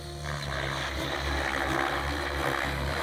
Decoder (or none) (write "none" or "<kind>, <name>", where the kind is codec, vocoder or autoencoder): none